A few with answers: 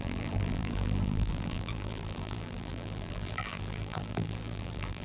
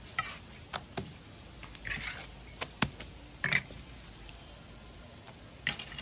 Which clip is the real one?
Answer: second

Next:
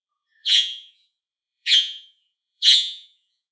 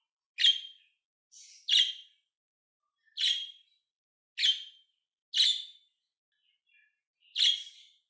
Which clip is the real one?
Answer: second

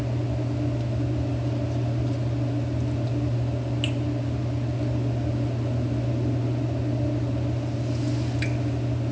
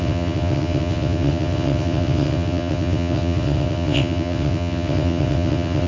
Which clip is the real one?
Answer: first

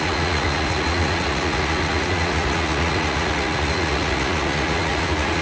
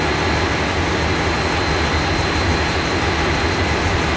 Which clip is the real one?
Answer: second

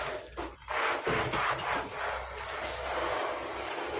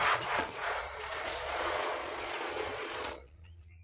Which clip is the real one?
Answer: first